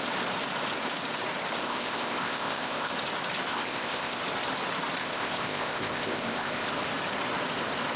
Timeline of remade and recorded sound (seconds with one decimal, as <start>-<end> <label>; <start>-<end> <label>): 0.0-1.6 recorded; 1.6-2.9 remade; 2.9-3.5 recorded; 3.5-4.2 remade; 4.2-5.0 recorded; 5.0-6.7 remade; 6.7-8.0 recorded